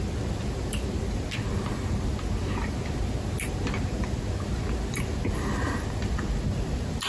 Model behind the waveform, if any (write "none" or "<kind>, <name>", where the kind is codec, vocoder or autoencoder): none